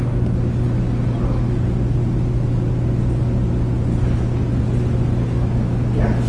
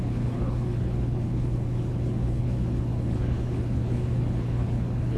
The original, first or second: first